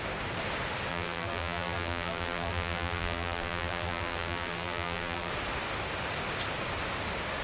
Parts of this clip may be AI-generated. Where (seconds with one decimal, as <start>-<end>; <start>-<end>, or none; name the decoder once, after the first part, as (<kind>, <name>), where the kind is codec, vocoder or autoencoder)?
0.9-5.3 (vocoder, BigVGAN v2)